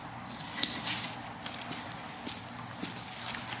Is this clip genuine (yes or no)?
yes